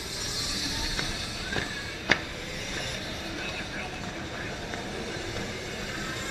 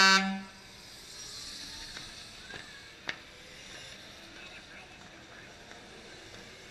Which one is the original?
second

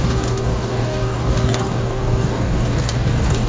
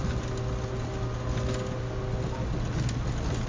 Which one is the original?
second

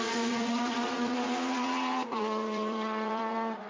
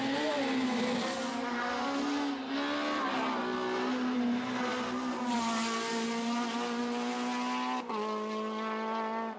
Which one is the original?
second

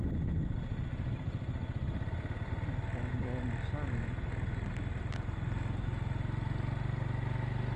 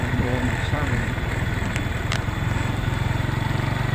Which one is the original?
first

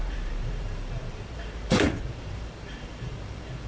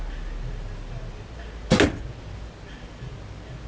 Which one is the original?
second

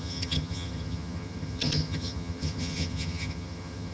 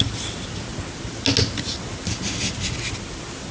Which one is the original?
second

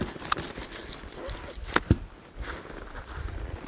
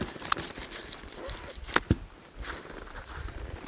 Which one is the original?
first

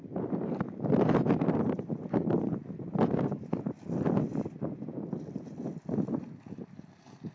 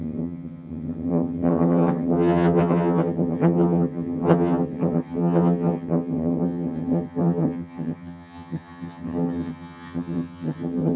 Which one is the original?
first